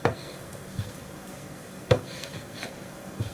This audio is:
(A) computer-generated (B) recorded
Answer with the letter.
A